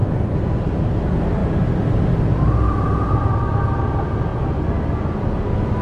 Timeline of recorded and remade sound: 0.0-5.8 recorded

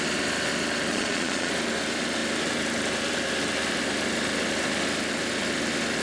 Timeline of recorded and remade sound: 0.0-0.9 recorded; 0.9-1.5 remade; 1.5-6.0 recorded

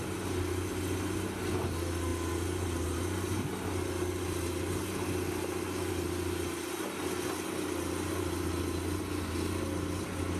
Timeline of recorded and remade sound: 0.0-10.4 recorded

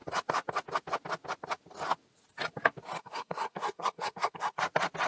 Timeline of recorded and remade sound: 0.0-3.0 recorded; 3.0-4.6 remade; 4.6-5.1 recorded

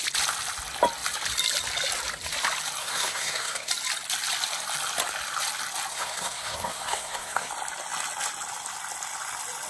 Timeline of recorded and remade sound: 0.0-2.8 recorded; 2.8-3.7 remade; 3.7-5.9 recorded; 5.9-7.5 remade; 7.5-9.7 recorded

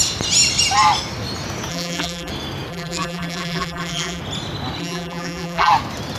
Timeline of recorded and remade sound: 0.0-1.7 recorded; 1.7-2.3 remade; 2.3-2.7 recorded; 2.7-4.2 remade; 4.2-4.8 recorded; 4.8-5.7 remade; 5.7-6.2 recorded

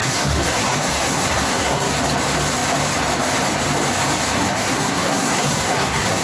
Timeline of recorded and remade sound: 0.0-1.9 remade; 1.9-4.4 recorded; 4.4-6.2 remade

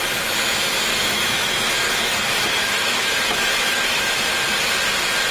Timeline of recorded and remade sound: 0.0-0.9 recorded; 0.9-4.1 remade; 4.1-5.3 recorded